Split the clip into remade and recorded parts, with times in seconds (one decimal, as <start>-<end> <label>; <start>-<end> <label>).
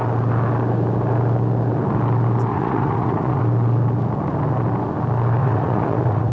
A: 0.0-2.5 recorded; 2.5-3.4 remade; 3.4-5.4 recorded; 5.4-6.3 remade